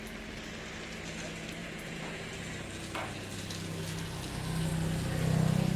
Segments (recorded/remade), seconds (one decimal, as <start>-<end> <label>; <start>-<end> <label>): 0.0-1.6 recorded; 1.6-2.3 remade; 2.3-5.8 recorded